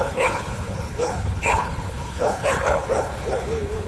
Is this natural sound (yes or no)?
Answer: no